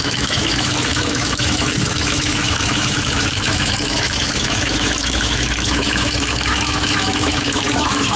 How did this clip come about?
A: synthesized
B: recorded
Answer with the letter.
A